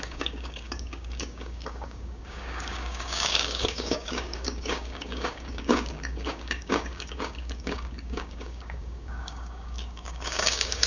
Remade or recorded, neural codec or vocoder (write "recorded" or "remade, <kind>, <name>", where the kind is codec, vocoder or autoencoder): remade, codec, DAC